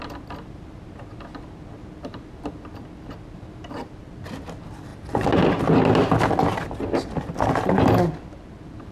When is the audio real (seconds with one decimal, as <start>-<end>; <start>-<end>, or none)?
0.0-8.9